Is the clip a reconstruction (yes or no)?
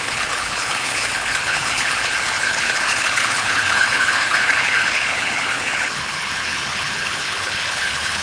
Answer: yes